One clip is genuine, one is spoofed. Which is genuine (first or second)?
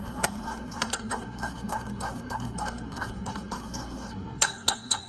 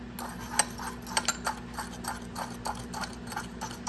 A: second